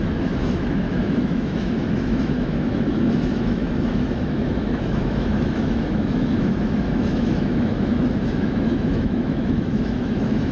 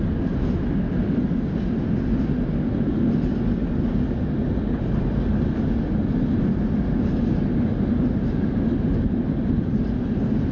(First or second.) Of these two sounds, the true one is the second